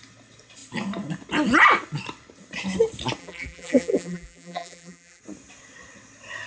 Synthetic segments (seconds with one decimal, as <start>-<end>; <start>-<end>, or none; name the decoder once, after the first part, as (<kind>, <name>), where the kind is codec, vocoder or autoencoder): 3.2-5.2 (vocoder, BigVGAN v2)